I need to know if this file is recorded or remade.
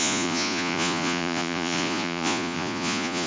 remade